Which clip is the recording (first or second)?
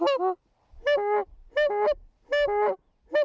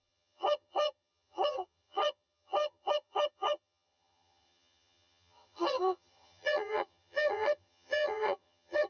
first